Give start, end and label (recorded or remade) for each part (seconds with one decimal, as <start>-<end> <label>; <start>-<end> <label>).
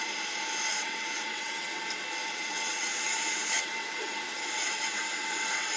0.0-0.7 recorded; 0.7-1.8 remade; 1.8-2.2 recorded; 2.2-5.8 remade